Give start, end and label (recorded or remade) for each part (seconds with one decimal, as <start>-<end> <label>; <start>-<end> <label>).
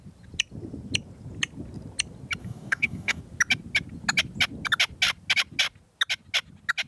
0.0-2.4 recorded; 2.4-3.2 remade; 3.2-6.9 recorded